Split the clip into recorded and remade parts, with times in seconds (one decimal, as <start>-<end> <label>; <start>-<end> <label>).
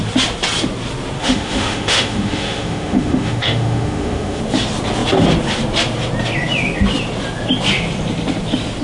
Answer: 0.0-1.2 recorded; 1.2-4.4 remade; 4.4-8.8 recorded